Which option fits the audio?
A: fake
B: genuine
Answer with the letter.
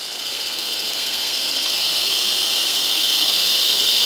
A